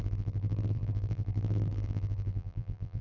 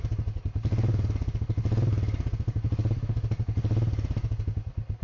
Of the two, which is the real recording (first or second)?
second